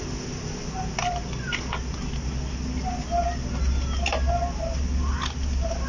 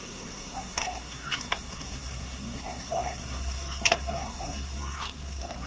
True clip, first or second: first